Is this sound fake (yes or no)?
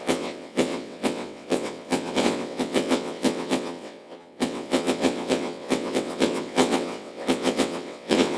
yes